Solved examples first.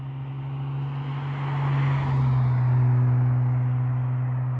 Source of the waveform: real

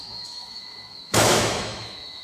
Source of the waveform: fake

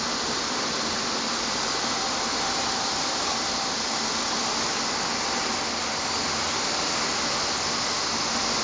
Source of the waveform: fake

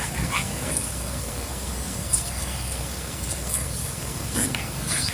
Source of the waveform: fake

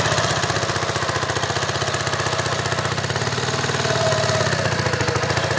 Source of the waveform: real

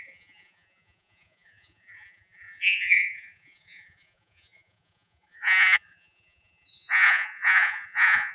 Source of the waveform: fake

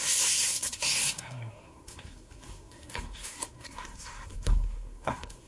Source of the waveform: fake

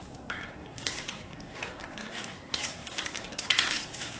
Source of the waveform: fake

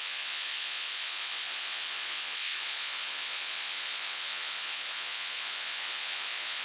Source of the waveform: fake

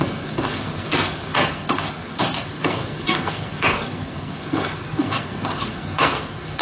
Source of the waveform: fake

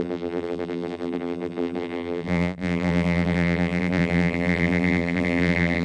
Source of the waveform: fake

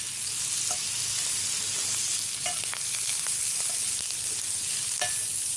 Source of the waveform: real